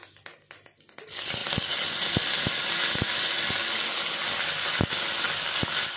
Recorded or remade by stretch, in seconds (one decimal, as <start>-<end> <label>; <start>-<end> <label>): 0.0-6.0 recorded